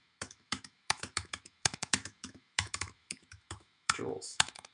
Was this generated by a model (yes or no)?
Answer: yes